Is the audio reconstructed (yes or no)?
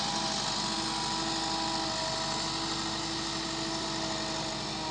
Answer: no